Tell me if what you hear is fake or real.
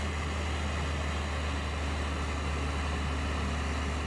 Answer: real